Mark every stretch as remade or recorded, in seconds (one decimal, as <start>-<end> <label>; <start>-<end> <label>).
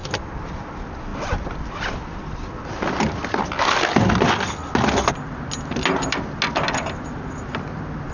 0.0-8.1 recorded